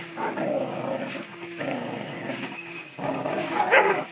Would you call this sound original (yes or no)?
no